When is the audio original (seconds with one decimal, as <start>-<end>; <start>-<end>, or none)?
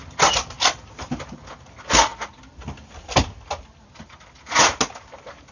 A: 0.0-5.5